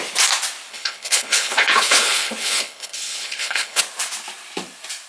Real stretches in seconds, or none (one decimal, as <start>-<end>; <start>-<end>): 0.0-0.7; 3.8-5.1